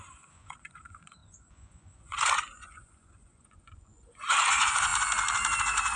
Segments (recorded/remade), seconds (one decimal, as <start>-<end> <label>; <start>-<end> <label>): 0.0-4.9 remade; 4.9-5.6 recorded; 5.6-6.0 remade